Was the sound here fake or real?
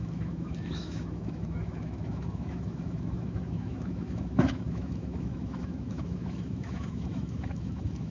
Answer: fake